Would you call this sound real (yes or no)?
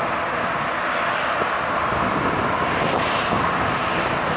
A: yes